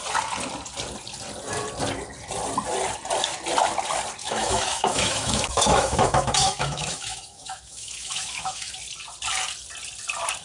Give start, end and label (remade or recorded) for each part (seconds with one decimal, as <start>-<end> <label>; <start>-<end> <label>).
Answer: 0.0-4.2 recorded; 4.2-8.7 remade; 8.7-10.4 recorded